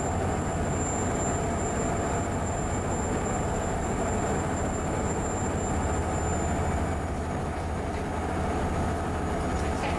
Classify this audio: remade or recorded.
recorded